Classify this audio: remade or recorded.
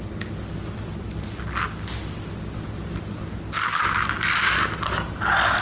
recorded